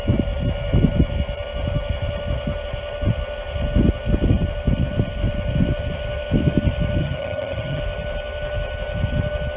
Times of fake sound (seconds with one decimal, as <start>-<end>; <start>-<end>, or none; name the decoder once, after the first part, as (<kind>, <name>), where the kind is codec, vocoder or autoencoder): 7.0-7.8 (vocoder, HiFi-GAN)